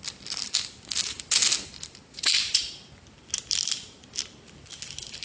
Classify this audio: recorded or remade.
recorded